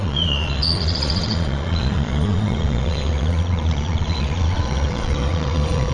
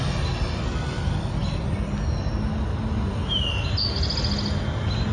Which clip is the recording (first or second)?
second